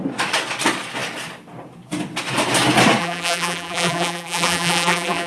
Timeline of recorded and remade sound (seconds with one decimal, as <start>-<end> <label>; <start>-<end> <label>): 0.0-3.0 recorded; 3.0-5.3 remade

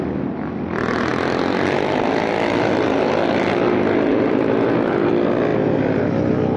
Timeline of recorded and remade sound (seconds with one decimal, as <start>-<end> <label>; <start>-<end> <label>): 0.0-6.6 recorded

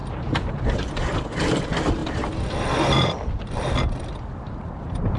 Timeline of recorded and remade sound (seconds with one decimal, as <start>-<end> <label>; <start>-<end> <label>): 0.0-5.2 recorded